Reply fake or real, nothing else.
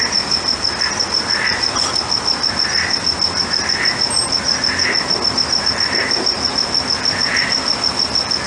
real